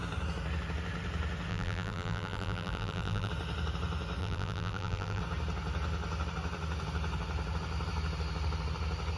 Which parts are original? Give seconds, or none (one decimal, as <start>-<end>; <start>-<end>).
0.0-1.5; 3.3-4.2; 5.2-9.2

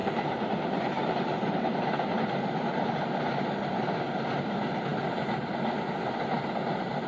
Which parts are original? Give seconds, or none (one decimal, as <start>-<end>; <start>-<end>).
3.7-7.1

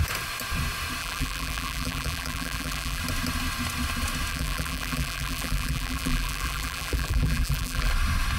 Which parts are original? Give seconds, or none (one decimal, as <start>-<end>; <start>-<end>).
0.0-1.0; 3.0-4.3; 7.9-8.4

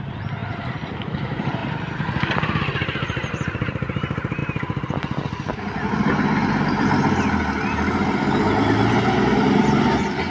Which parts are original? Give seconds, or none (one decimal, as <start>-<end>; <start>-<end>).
0.0-10.3